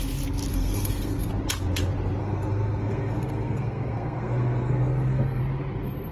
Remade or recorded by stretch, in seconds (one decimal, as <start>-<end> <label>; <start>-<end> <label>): 0.0-0.5 recorded; 0.5-1.3 remade; 1.3-2.2 recorded; 2.2-5.4 remade; 5.4-6.1 recorded